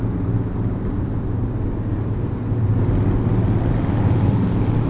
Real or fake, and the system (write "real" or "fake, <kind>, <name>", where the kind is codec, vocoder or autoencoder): real